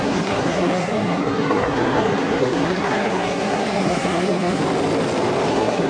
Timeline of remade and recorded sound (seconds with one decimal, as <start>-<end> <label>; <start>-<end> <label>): 0.0-4.6 remade; 4.6-5.5 recorded; 5.5-5.9 remade